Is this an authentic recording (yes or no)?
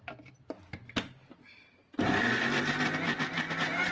yes